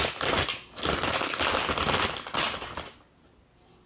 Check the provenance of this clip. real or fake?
real